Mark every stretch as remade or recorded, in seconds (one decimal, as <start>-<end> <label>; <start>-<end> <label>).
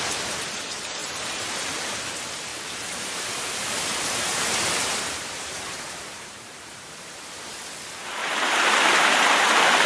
0.0-1.0 recorded; 1.0-2.0 remade; 2.0-2.5 recorded; 2.5-7.5 remade; 7.5-8.2 recorded; 8.2-9.2 remade; 9.2-9.9 recorded